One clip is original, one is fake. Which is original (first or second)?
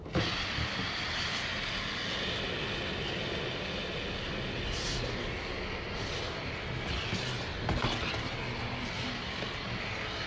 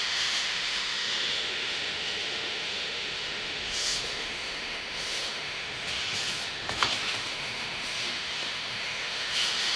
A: first